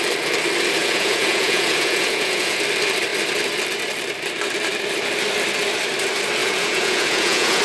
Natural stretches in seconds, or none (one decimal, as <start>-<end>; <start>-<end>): 0.0-0.8; 2.6-6.4